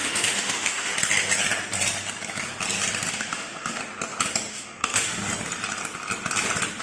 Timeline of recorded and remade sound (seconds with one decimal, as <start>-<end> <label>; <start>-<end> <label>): 0.0-0.9 remade; 0.9-3.1 recorded; 3.1-3.8 remade; 3.8-4.5 recorded; 4.5-5.2 remade; 5.2-6.8 recorded